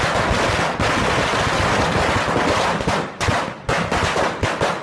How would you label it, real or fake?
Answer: real